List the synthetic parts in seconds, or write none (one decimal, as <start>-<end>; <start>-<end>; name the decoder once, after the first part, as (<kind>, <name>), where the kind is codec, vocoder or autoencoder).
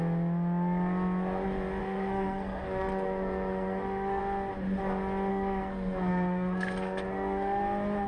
1.8-4.2 (codec, SNAC); 5.3-7.6